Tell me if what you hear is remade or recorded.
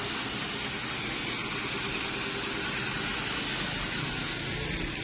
recorded